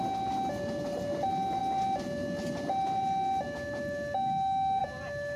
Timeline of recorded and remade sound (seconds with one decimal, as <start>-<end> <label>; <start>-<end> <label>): 0.0-5.4 recorded